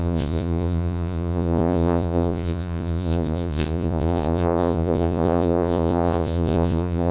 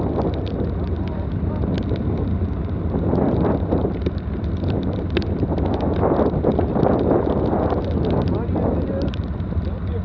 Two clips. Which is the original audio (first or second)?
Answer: second